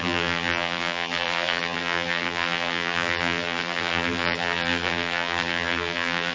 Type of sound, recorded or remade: remade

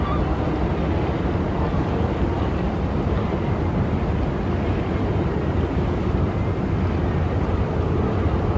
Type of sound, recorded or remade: recorded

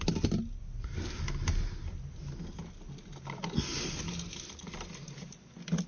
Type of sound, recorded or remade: recorded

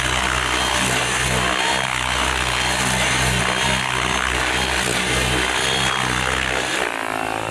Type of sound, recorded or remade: recorded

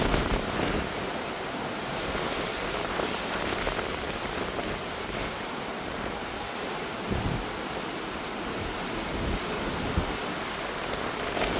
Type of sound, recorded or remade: recorded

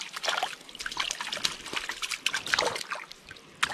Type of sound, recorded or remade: recorded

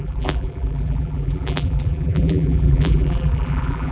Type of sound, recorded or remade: remade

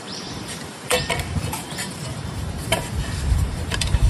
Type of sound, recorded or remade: remade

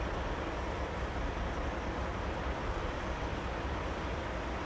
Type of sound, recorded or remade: remade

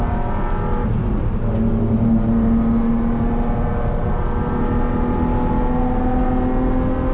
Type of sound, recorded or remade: recorded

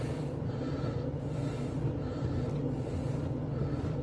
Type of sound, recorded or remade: remade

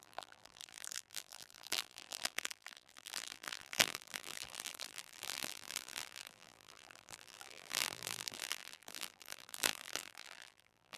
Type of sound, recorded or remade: remade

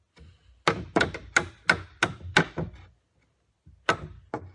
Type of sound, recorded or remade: recorded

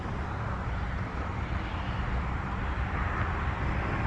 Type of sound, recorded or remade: remade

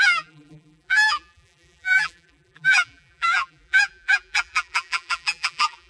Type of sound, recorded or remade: remade